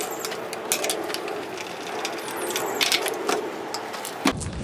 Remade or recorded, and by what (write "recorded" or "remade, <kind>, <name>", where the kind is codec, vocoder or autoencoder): recorded